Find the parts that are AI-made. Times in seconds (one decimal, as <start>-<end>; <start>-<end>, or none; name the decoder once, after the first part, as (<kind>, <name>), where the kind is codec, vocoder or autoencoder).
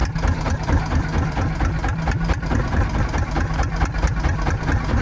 0.0-3.0 (vocoder, BigVGAN v2); 4.3-5.0